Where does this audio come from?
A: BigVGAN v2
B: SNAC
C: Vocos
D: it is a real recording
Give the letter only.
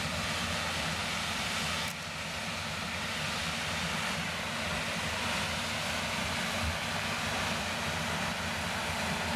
D